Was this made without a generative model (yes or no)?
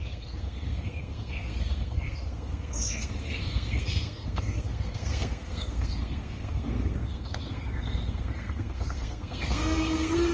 no